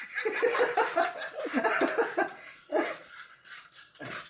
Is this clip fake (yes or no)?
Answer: no